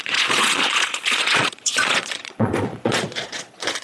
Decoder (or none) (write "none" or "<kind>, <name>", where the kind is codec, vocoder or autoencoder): vocoder, Vocos